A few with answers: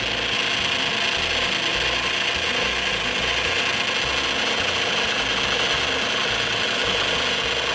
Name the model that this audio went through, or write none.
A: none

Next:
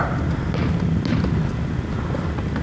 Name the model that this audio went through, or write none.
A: none